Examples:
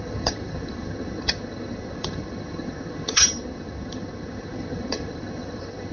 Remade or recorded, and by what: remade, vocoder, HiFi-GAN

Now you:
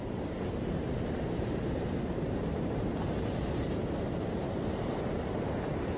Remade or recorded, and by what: remade, vocoder, BigVGAN v2